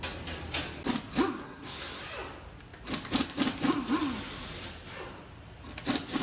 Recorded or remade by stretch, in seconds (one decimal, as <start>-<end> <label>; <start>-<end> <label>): 0.0-1.4 recorded; 1.4-2.0 remade; 2.0-6.2 recorded